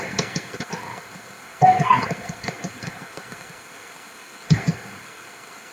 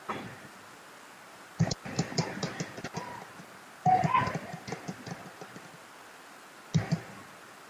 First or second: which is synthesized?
first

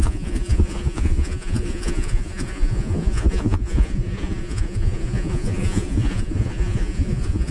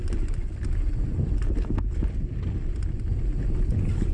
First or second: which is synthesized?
first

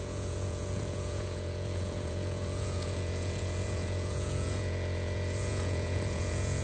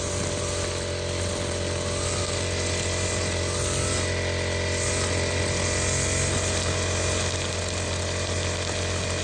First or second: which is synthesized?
first